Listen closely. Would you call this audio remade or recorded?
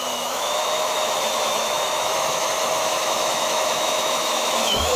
remade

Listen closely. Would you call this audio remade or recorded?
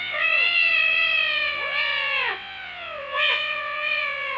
remade